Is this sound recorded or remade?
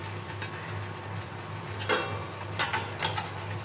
recorded